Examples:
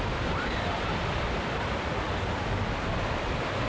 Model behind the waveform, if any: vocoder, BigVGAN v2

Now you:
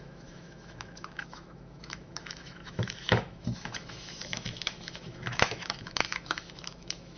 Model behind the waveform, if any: autoencoder, DAC-VAE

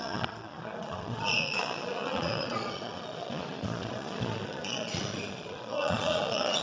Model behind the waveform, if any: vocoder, Vocos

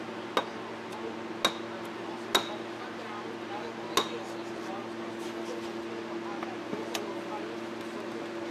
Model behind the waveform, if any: none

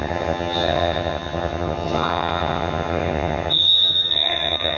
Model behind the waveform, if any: vocoder, HiFi-GAN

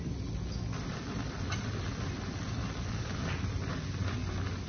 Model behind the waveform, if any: none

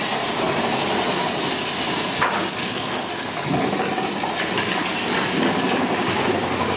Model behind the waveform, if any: none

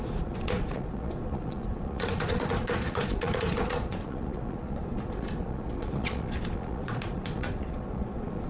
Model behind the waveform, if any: vocoder, Vocos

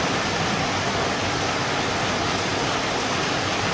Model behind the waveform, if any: none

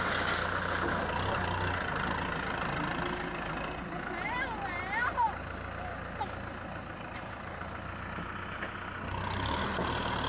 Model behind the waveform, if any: none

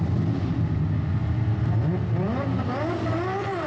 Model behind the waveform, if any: none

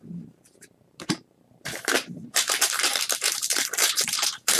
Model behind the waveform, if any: vocoder, BigVGAN v2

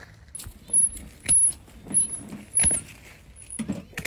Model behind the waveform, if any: none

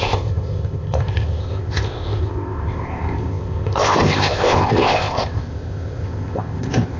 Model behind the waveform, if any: codec, ZipCodec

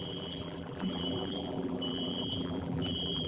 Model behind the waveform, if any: vocoder, BigVGAN v2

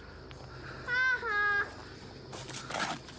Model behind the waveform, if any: none